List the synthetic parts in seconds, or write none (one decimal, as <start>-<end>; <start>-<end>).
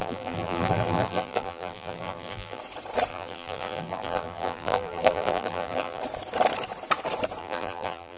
0.0-2.6; 3.1-6.0; 7.4-8.2